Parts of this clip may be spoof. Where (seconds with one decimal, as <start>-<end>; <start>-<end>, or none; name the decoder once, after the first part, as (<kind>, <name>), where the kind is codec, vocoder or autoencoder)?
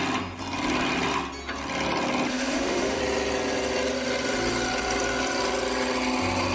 2.3-3.0 (autoencoder, DAC-VAE)